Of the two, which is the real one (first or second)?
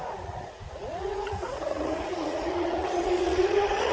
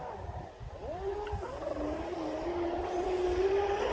second